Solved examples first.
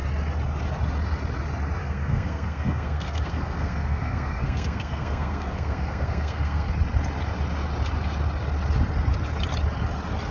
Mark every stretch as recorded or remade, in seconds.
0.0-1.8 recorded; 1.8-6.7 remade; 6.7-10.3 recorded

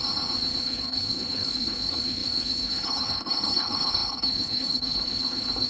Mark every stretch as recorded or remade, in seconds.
0.0-0.6 recorded; 0.6-5.7 remade